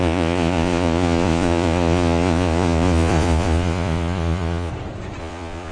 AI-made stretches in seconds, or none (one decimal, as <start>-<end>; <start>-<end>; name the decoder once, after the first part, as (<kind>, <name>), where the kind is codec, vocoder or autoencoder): 0.0-4.7 (vocoder, Vocos); 5.2-5.7